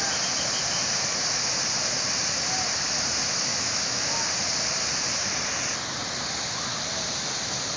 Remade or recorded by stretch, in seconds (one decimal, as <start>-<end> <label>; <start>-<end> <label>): 0.0-3.5 recorded; 3.5-4.0 remade; 4.0-7.8 recorded